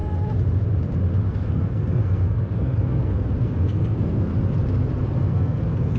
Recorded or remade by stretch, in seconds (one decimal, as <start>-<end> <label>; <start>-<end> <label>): 0.0-1.3 recorded; 1.3-4.3 remade; 4.3-5.2 recorded; 5.2-6.0 remade